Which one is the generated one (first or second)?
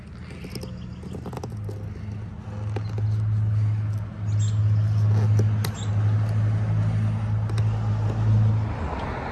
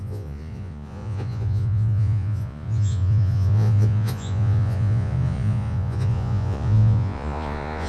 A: second